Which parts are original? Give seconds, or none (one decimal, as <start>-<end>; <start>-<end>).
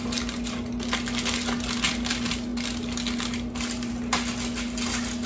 0.0-5.3